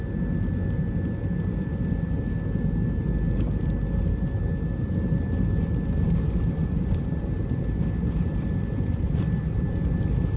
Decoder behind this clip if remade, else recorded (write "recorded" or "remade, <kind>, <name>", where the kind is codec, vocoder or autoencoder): recorded